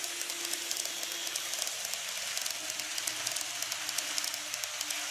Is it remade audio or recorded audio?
recorded